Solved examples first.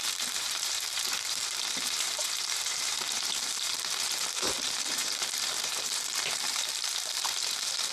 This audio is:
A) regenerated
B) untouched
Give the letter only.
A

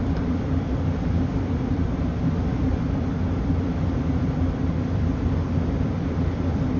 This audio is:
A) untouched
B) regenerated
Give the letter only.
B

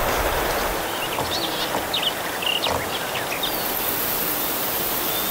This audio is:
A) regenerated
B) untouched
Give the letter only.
B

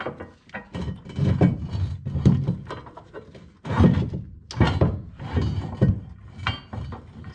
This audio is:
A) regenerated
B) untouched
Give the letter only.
B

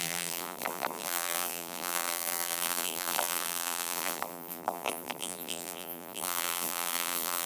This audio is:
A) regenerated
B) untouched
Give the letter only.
A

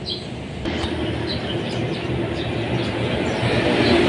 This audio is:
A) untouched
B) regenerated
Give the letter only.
A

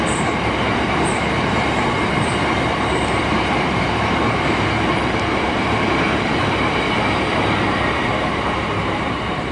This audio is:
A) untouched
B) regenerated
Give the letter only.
B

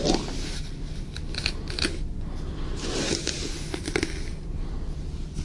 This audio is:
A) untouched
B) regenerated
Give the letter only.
A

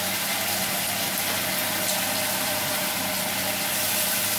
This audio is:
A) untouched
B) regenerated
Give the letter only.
A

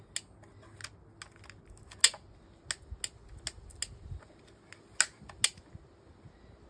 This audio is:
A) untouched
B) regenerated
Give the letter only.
A